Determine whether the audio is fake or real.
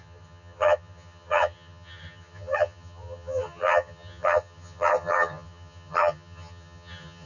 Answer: fake